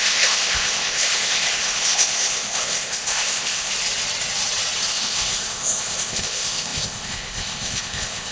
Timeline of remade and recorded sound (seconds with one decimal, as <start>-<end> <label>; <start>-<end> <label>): 0.0-3.7 remade; 3.7-4.9 recorded; 4.9-8.3 remade